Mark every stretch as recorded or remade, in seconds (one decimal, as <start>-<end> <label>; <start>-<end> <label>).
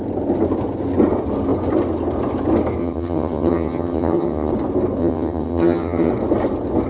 0.0-2.8 recorded; 2.8-4.5 remade; 4.5-5.0 recorded; 5.0-6.1 remade; 6.1-6.9 recorded